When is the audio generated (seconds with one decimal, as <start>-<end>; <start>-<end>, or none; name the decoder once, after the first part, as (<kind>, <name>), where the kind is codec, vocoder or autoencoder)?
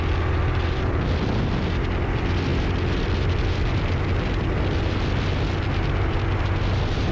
none